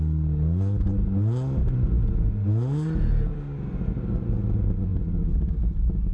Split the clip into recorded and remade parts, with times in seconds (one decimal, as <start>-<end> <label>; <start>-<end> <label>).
0.0-6.1 recorded